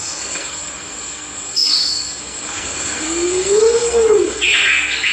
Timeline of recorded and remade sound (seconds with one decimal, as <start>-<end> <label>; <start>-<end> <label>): 0.0-5.1 remade